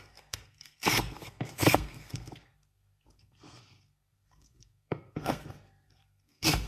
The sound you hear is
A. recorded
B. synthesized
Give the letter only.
B